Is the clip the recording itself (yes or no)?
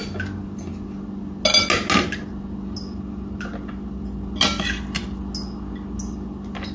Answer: yes